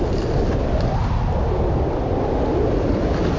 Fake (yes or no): no